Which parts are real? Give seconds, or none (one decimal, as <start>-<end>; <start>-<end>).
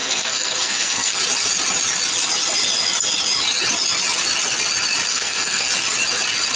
1.2-5.1; 5.7-6.6